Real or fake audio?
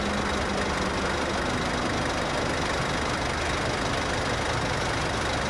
real